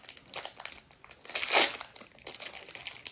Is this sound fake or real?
real